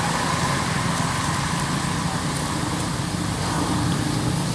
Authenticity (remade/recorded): recorded